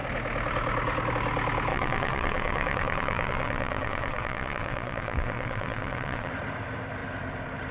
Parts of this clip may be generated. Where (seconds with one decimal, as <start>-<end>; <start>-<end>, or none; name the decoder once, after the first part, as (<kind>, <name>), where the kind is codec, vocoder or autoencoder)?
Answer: 1.7-6.3 (vocoder, WaveNeXt)